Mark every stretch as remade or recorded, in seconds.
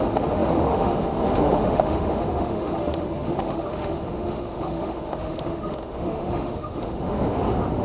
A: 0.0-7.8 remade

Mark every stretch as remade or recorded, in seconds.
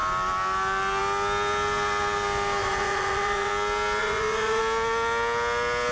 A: 0.0-2.6 recorded; 2.6-3.5 remade; 3.5-4.0 recorded; 4.0-4.6 remade; 4.6-5.9 recorded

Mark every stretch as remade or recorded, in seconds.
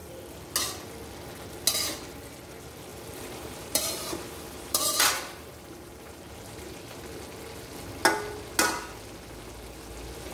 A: 0.0-2.9 recorded; 2.9-6.7 remade; 6.7-10.3 recorded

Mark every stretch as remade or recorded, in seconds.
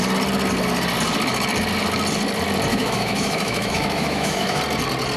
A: 0.0-2.7 recorded; 2.7-4.6 remade; 4.6-5.2 recorded